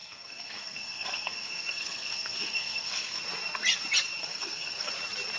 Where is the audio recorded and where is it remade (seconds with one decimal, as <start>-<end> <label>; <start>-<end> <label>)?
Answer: 0.0-3.2 remade; 3.2-4.2 recorded; 4.2-4.9 remade; 4.9-5.4 recorded